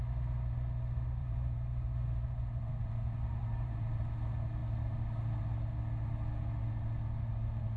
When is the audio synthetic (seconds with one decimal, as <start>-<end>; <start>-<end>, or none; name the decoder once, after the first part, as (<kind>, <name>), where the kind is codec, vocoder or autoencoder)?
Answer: 1.2-2.9 (vocoder, BigVGAN v2); 3.4-4.0

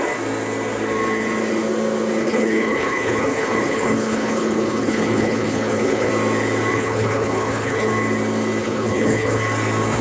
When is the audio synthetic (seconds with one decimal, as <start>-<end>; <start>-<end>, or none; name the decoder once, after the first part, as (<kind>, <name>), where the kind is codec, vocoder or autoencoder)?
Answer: 2.2-6.1 (codec, HILCodec); 6.7-7.9; 8.6-9.4

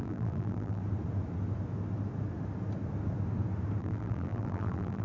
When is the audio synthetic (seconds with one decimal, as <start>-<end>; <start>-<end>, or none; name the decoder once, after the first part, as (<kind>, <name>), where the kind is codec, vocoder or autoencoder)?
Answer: 0.0-0.8 (vocoder, BigVGAN v2); 3.8-5.0

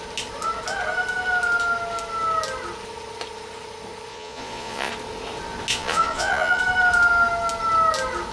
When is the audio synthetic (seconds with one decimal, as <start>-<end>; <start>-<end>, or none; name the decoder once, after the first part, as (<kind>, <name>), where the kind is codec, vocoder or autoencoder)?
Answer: 4.1-4.9 (vocoder, Vocos); 5.7-6.6

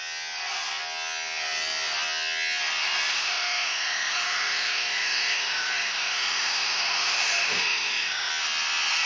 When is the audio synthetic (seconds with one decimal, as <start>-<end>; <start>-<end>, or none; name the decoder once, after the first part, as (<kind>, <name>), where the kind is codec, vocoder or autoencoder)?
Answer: 3.1-8.3 (autoencoder, DAC-VAE)

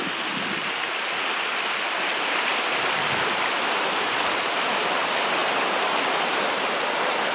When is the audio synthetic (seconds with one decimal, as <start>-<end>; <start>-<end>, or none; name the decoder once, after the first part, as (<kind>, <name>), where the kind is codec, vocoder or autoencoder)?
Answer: none

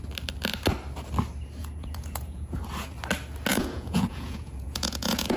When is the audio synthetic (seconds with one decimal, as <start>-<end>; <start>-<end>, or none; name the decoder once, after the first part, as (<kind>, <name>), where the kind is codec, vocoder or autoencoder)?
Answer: 1.6-2.6 (vocoder, Vocos); 3.5-5.4